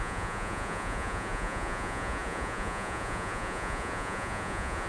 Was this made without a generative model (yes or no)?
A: no